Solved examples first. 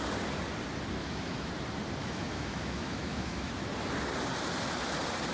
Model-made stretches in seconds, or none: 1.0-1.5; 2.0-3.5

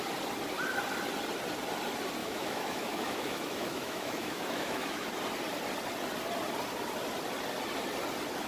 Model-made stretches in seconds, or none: 2.2-5.1

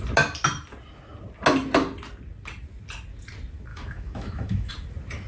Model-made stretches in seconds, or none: 3.7-4.7